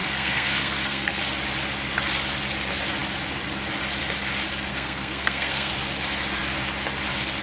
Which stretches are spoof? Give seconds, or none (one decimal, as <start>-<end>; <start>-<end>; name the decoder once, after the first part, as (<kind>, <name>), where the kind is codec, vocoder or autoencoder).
0.0-1.2 (codec, SNAC); 4.7-5.7